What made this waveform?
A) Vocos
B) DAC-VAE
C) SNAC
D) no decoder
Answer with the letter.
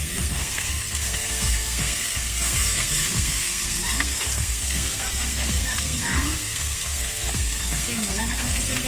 C